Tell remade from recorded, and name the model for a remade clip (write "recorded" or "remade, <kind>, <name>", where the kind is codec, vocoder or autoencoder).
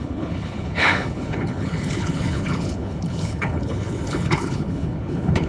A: remade, codec, HILCodec